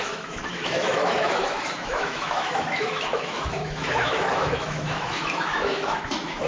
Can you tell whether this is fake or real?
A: fake